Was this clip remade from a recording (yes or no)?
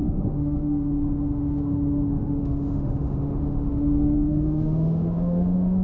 yes